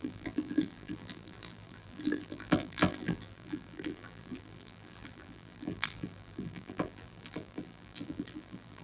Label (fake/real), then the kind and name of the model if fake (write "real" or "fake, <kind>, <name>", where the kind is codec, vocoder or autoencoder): fake, vocoder, BigVGAN v2